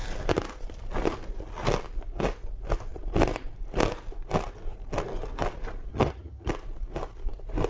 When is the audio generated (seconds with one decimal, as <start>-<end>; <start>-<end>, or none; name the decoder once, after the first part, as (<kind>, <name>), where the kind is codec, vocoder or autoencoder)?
5.9-6.5 (vocoder, HiFi-GAN)